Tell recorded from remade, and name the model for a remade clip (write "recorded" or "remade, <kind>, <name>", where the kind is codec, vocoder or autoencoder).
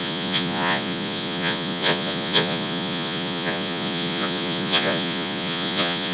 remade, vocoder, Vocos